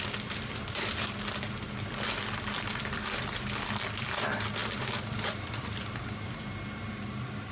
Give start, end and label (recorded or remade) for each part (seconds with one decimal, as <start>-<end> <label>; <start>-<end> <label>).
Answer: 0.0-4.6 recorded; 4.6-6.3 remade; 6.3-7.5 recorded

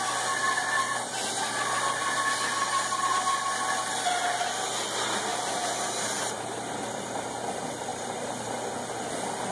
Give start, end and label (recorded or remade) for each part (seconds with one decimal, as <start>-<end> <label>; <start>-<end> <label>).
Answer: 0.0-5.3 recorded; 5.3-7.3 remade; 7.3-7.9 recorded; 7.9-8.7 remade; 8.7-9.5 recorded

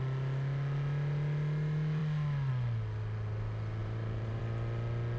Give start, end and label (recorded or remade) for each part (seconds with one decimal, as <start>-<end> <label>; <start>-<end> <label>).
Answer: 0.0-3.8 recorded; 3.8-4.4 remade; 4.4-5.2 recorded

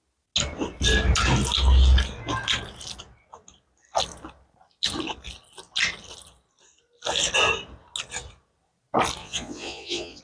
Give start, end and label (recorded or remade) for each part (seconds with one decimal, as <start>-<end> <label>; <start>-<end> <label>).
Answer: 0.0-9.2 recorded; 9.2-10.2 remade